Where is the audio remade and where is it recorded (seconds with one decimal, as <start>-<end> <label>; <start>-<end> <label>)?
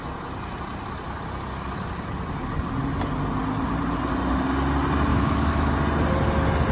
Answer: 0.0-5.1 recorded; 5.1-5.7 remade; 5.7-6.7 recorded